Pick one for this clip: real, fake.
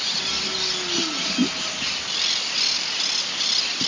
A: real